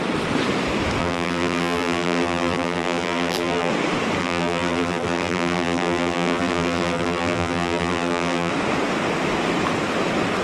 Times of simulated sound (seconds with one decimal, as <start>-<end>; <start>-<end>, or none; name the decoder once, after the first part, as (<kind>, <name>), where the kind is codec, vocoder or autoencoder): 1.0-3.7 (vocoder, BigVGAN v2); 4.2-8.5